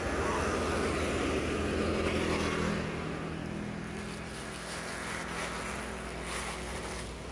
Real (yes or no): yes